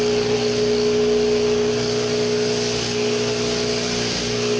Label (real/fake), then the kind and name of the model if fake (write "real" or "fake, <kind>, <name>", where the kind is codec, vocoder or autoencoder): real